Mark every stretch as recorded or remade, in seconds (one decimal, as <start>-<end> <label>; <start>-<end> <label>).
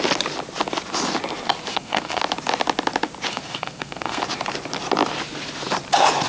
0.0-1.7 recorded; 1.7-2.2 remade; 2.2-3.3 recorded; 3.3-4.2 remade; 4.2-6.3 recorded